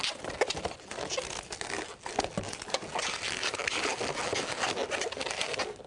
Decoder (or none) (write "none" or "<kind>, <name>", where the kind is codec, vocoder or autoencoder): none